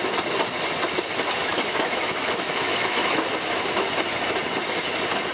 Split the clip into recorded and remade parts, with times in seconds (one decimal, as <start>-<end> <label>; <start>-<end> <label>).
0.0-1.4 recorded; 1.4-3.3 remade; 3.3-5.3 recorded